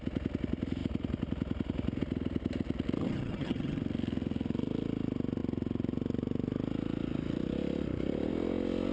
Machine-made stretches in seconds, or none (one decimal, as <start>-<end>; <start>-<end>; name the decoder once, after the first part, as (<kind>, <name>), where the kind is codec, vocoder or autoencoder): 3.0-3.8 (vocoder, HiFi-GAN)